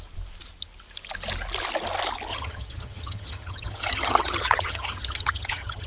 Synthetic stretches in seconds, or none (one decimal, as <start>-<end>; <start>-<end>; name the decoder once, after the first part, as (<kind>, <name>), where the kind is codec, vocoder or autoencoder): 2.3-5.9 (vocoder, HiFi-GAN)